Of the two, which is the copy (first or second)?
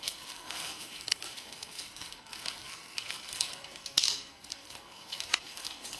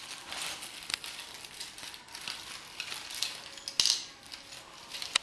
first